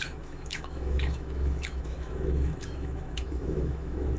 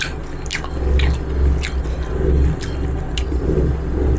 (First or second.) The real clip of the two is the second